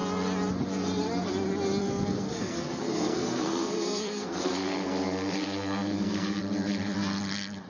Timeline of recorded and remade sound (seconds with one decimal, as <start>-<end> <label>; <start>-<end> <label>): 0.0-1.8 recorded; 1.8-6.4 remade; 6.4-7.7 recorded